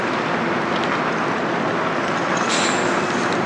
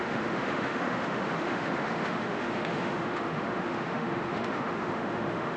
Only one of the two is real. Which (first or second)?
first